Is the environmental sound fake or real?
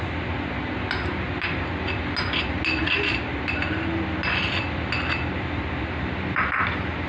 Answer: real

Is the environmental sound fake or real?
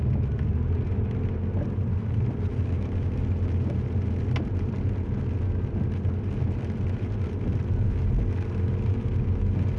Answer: real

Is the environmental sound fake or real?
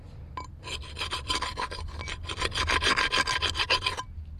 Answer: real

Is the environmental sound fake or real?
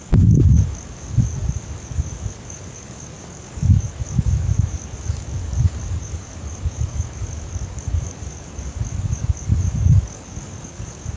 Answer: fake